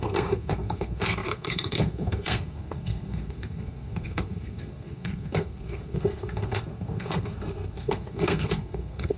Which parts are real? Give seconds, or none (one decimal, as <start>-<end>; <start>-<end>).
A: none